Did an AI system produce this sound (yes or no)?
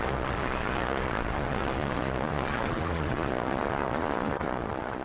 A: yes